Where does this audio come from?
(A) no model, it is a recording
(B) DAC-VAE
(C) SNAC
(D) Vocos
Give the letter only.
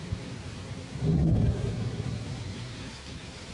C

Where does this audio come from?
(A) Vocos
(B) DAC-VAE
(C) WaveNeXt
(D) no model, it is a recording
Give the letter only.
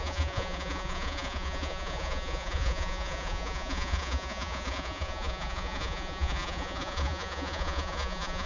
A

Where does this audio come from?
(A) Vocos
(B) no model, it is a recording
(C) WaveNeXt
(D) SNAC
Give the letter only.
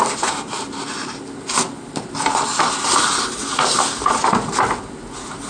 B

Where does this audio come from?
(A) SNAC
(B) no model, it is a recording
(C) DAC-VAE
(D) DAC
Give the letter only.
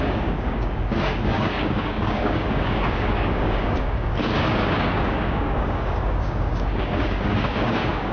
D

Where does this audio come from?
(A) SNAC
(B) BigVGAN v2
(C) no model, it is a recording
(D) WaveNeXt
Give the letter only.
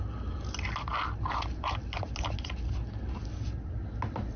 C